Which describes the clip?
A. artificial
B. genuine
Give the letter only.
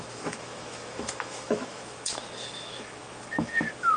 A